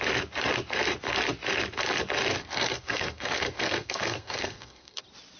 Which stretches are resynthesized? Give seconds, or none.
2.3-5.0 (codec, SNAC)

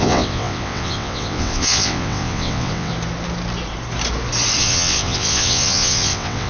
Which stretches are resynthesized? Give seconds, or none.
0.0-2.9 (vocoder, WaveNeXt); 4.6-6.5